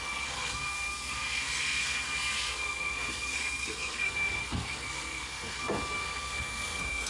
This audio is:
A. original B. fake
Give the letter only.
B